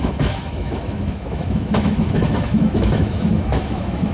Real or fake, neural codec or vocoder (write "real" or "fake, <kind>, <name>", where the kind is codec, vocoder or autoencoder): fake, autoencoder, DAC-VAE